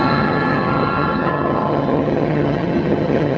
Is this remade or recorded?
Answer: remade